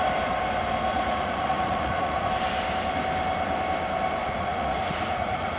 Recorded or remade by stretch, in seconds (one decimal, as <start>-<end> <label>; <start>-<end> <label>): 0.0-0.9 recorded; 0.9-2.3 remade; 2.3-4.2 recorded; 4.2-5.6 remade